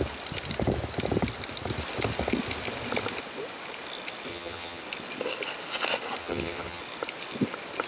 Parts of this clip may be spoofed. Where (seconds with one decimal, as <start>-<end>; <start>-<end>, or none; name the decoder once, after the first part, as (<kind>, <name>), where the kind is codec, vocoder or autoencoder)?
4.3-4.8 (vocoder, HiFi-GAN); 6.2-6.8